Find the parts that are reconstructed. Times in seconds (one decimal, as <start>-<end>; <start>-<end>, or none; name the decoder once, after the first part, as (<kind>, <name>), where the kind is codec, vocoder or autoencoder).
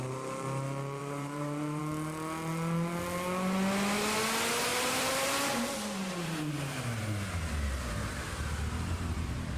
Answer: 1.0-1.8 (vocoder, BigVGAN v2); 4.7-7.9